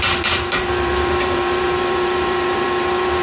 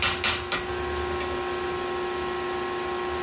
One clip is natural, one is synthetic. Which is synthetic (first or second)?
first